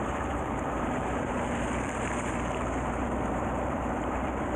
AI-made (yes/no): yes